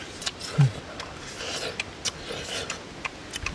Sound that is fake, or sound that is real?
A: real